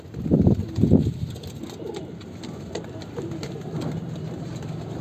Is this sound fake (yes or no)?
no